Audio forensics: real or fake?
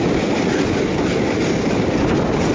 real